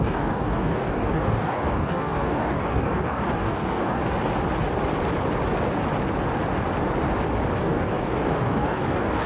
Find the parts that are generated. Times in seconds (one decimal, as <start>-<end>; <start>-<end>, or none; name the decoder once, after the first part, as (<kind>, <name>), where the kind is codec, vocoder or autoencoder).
0.0-4.0 (codec, DAC); 7.6-9.3